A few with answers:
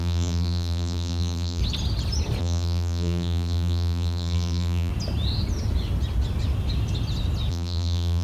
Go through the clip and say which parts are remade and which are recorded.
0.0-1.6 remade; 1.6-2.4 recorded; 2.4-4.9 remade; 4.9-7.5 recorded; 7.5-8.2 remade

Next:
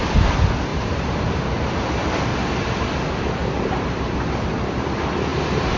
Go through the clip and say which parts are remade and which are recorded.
0.0-0.7 recorded; 0.7-1.4 remade; 1.4-3.4 recorded; 3.4-4.5 remade; 4.5-5.3 recorded; 5.3-5.8 remade

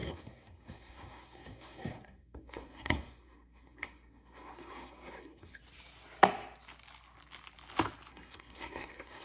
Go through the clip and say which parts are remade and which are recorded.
0.0-5.6 remade; 5.6-8.1 recorded; 8.1-9.2 remade

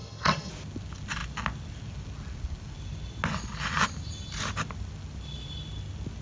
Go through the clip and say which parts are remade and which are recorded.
0.0-0.5 remade; 0.5-6.2 recorded